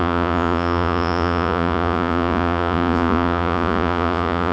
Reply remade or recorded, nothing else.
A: remade